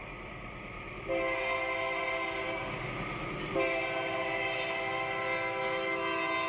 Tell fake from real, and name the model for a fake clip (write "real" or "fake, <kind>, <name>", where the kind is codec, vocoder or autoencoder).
real